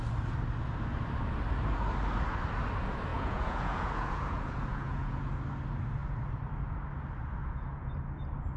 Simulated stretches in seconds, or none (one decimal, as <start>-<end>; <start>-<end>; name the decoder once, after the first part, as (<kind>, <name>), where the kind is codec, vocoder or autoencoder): 3.1-5.3 (vocoder, Vocos); 7.4-7.9